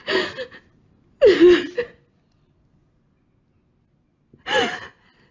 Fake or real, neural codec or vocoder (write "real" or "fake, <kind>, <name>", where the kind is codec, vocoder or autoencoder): real